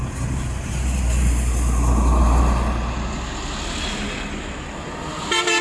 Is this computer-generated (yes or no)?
no